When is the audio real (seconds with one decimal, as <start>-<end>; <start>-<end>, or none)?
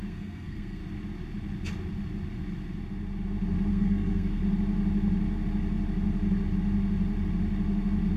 0.8-3.7; 4.4-8.2